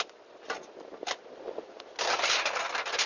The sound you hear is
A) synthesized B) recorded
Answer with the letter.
B